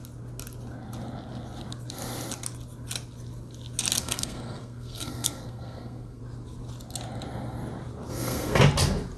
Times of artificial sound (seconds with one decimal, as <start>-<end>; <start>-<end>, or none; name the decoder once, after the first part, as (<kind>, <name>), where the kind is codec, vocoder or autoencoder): 4.0-6.2 (codec, SNAC); 8.1-8.6